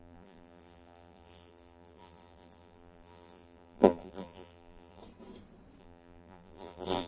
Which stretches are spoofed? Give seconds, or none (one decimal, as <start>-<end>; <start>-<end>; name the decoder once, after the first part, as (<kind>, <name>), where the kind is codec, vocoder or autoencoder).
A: 0.0-5.0 (vocoder, BigVGAN v2); 5.8-7.1